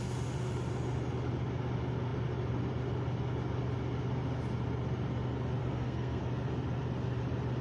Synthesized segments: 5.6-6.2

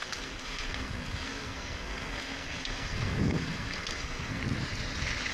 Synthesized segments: 0.0-4.4

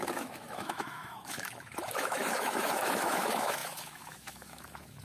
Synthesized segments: 0.0-5.0

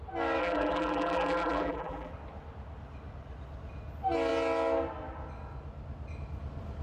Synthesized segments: 0.4-2.1

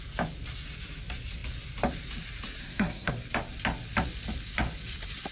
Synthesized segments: 2.6-3.1

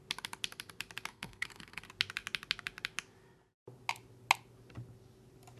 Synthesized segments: 1.1-1.8

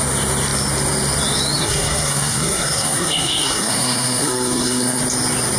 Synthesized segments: 1.6-5.0

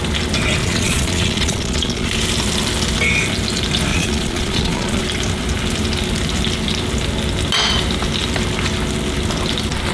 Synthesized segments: 0.6-2.1; 3.9-5.0